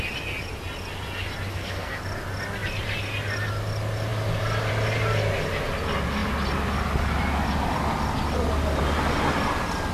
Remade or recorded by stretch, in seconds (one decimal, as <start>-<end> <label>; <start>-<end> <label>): 0.0-1.5 recorded; 1.5-2.0 remade; 2.0-9.9 recorded